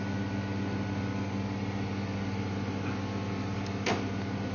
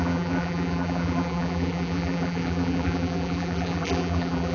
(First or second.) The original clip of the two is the first